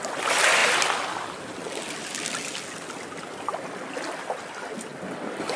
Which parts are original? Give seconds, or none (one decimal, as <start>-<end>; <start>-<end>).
0.0-5.6